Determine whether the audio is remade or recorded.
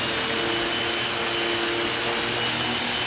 recorded